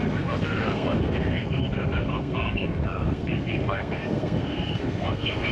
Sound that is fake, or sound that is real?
fake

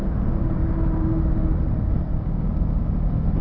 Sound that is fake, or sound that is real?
real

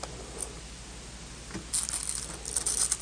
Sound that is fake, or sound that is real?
real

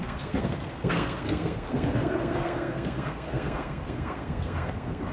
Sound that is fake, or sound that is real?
fake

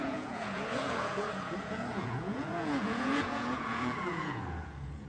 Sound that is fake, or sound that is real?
fake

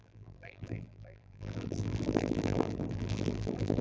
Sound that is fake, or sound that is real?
fake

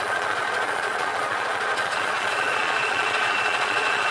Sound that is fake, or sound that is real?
fake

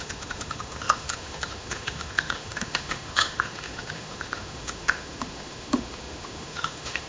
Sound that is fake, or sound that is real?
fake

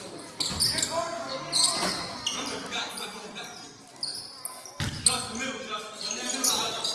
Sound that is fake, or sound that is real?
real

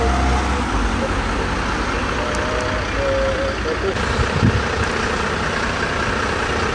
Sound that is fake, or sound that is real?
real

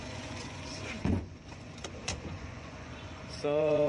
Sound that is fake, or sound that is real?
fake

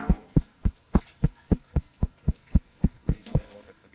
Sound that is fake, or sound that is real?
fake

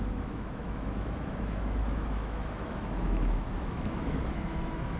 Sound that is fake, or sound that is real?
fake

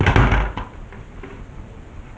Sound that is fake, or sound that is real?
real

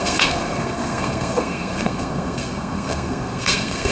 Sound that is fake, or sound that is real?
fake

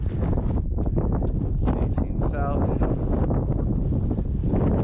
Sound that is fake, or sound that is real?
real